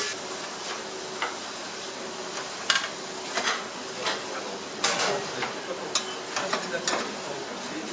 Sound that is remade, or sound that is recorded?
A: recorded